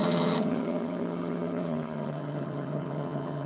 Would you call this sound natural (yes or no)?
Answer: no